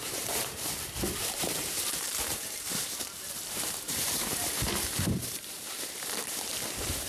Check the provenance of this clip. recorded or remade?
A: remade